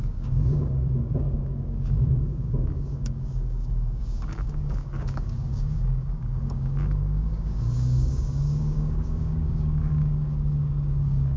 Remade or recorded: remade